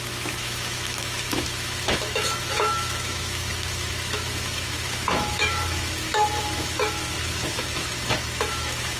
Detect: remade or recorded remade